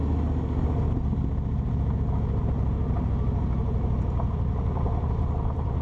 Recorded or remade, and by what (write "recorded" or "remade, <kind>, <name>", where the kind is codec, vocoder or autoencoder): recorded